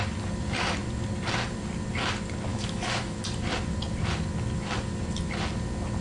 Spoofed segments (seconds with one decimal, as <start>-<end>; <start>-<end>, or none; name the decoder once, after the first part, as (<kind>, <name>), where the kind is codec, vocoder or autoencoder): 2.5-3.2 (autoencoder, DAC-VAE)